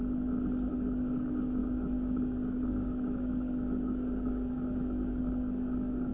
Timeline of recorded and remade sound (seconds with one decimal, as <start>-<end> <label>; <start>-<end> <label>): 0.0-0.7 recorded; 0.7-6.1 remade